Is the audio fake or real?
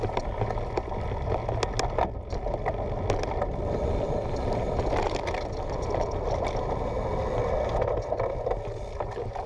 real